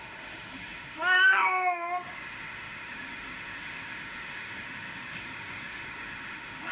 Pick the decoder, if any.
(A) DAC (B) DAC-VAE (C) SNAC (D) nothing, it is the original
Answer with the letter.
B